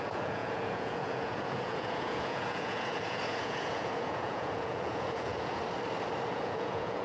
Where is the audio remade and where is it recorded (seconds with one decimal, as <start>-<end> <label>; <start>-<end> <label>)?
0.0-5.6 remade; 5.6-6.3 recorded; 6.3-7.0 remade